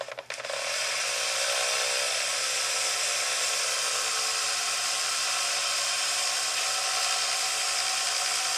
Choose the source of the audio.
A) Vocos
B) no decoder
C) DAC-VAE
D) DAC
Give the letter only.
B